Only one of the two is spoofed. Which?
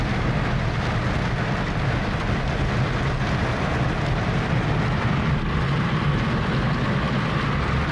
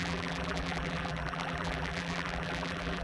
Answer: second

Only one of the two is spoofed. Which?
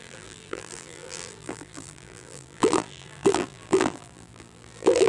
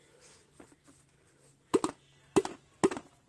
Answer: first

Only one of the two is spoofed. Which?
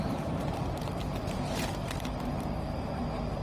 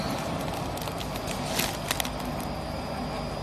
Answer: first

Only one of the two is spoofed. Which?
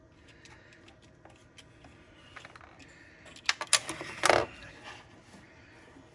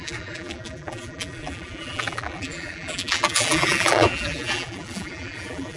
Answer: second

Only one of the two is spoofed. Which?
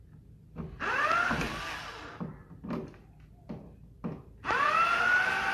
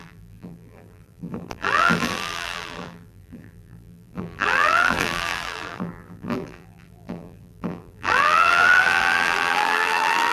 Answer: second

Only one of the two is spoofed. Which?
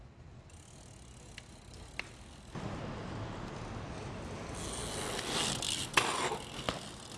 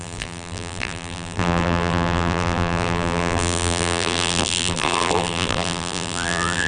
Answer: second